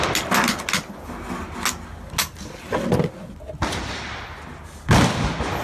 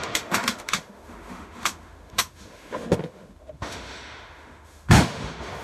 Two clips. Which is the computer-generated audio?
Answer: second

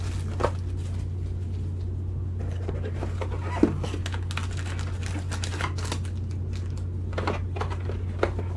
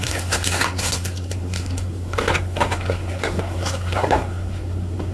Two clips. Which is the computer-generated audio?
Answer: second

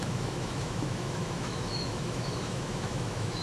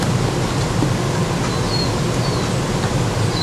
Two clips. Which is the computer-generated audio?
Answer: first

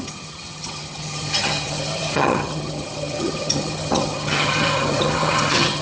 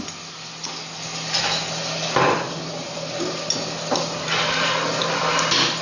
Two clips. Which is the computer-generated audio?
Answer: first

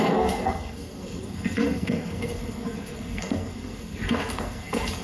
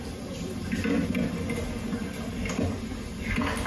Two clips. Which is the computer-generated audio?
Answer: first